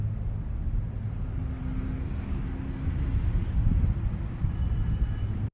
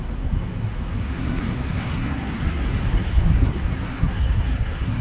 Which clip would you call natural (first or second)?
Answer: first